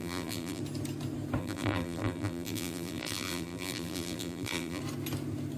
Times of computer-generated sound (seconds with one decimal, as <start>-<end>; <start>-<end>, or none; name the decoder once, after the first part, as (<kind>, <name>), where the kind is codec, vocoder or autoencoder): 0.0-0.6 (vocoder, BigVGAN v2); 1.4-4.8